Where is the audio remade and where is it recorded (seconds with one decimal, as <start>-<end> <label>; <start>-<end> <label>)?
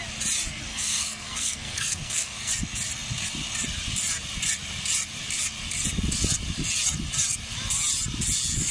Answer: 0.0-0.7 recorded; 0.7-2.5 remade; 2.5-8.7 recorded